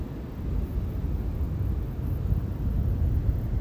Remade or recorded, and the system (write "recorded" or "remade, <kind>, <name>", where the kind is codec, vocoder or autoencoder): recorded